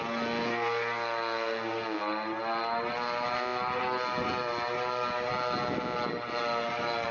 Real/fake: real